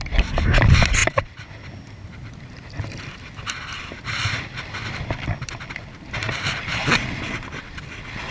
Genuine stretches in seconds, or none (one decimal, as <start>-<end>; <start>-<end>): 6.7-7.7